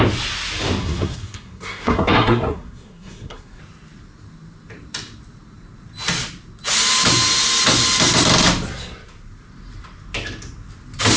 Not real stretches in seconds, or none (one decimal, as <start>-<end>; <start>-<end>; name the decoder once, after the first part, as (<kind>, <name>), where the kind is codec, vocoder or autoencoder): 0.8-3.6 (codec, SNAC)